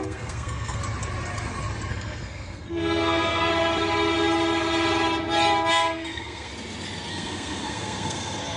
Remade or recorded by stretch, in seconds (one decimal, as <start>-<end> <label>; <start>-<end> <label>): 0.0-0.8 remade; 0.8-1.9 recorded; 1.9-3.5 remade; 3.5-5.7 recorded; 5.7-6.5 remade; 6.5-7.1 recorded; 7.1-8.6 remade